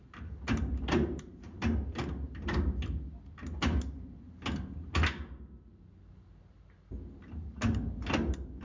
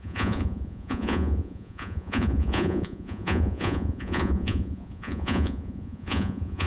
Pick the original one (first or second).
first